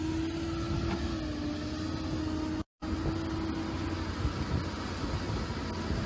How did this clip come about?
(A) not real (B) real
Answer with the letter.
B